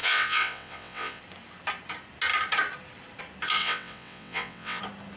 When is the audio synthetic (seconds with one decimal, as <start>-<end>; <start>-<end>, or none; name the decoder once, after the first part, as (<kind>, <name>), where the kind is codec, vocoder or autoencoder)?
0.0-1.2 (vocoder, WaveNeXt); 3.6-4.8

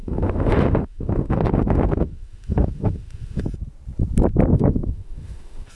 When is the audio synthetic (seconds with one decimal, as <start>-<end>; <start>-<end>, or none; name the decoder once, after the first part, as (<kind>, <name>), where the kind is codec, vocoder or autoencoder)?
0.0-3.4 (autoencoder, DAC-VAE); 4.5-5.7